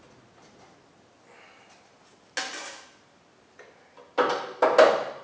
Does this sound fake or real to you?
real